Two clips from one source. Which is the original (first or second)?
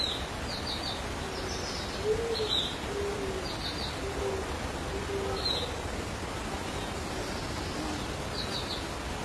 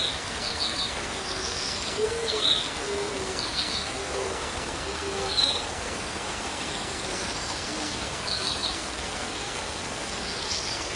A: first